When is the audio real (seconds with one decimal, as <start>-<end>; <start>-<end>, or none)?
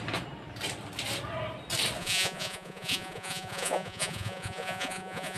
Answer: 0.0-2.0